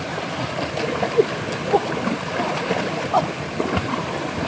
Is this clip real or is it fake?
real